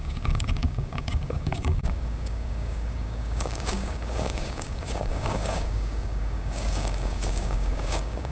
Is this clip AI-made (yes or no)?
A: yes